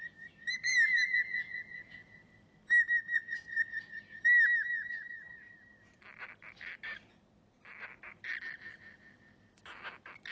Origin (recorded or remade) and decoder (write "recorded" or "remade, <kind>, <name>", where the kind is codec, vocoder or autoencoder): recorded